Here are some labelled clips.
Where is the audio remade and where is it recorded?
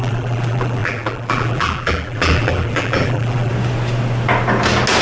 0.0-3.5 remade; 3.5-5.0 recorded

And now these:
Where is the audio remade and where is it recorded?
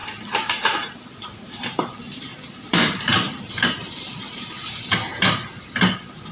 0.0-5.1 remade; 5.1-6.3 recorded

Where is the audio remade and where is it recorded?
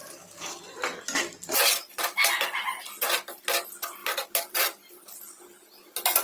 0.0-4.0 recorded; 4.0-5.2 remade; 5.2-6.2 recorded